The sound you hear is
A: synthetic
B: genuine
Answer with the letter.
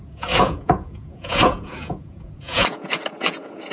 A